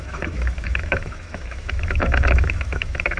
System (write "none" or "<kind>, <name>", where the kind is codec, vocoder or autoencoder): autoencoder, DAC-VAE